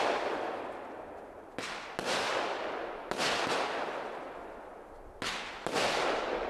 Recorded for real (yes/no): yes